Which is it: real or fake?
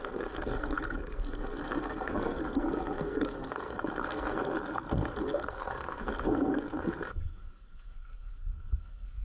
fake